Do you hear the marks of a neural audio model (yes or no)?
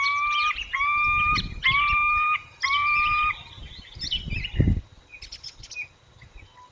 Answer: no